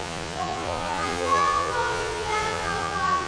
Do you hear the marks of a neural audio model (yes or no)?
yes